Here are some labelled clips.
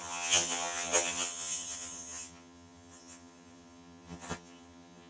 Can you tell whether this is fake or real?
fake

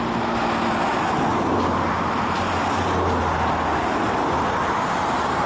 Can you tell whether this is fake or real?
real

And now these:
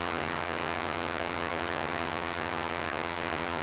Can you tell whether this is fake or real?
fake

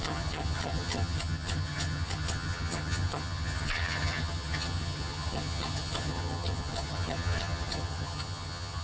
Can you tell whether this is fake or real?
fake